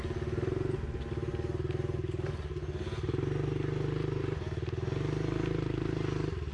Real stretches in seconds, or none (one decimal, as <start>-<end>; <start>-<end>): 0.0-6.5